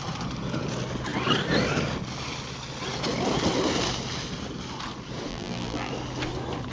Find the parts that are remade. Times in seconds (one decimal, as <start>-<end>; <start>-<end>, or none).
5.3-5.9